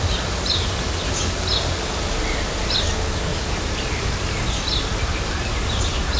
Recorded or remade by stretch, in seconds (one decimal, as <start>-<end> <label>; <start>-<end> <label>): 0.0-3.3 recorded; 3.3-4.4 remade; 4.4-4.9 recorded; 4.9-5.8 remade; 5.8-6.2 recorded